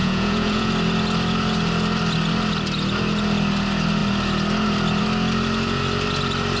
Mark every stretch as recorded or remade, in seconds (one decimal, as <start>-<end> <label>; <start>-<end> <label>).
0.0-0.7 remade; 0.7-6.6 recorded